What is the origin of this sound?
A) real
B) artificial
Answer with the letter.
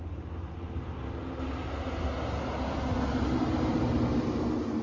A